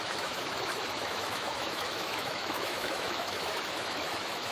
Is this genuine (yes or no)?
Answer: no